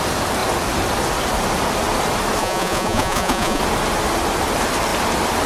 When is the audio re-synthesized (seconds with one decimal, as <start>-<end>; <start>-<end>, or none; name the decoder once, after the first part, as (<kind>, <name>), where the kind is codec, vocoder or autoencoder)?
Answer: 2.4-3.6 (vocoder, Vocos)